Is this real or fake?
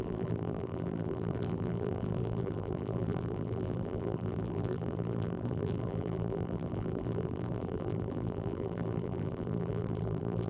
fake